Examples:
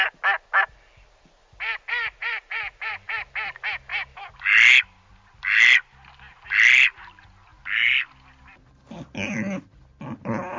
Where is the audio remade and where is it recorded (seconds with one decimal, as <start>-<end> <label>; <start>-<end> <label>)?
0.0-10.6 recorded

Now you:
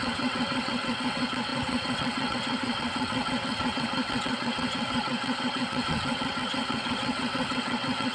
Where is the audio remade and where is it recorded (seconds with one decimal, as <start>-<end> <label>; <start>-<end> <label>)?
0.0-8.1 remade

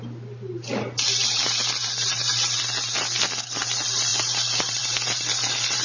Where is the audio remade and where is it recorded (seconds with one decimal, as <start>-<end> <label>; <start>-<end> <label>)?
0.0-5.8 recorded

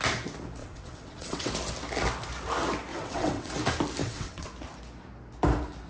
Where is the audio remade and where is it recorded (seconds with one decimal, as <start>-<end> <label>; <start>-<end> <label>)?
0.0-0.6 recorded; 0.6-1.5 remade; 1.5-2.9 recorded; 2.9-3.5 remade; 3.5-4.0 recorded; 4.0-4.5 remade; 4.5-5.9 recorded